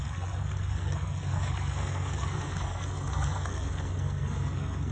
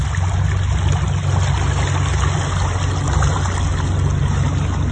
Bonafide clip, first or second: second